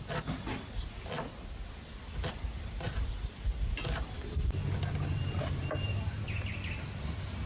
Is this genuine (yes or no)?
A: yes